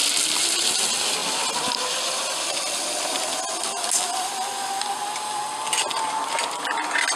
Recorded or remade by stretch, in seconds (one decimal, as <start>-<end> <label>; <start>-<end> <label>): 0.0-7.2 recorded